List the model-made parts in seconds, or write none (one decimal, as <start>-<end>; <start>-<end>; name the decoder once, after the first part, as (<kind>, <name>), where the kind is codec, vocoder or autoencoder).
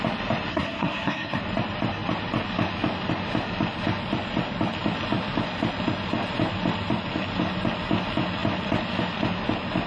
0.5-1.4 (codec, SNAC)